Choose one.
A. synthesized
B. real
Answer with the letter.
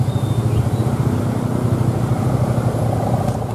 B